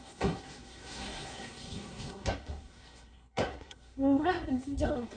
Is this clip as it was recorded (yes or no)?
no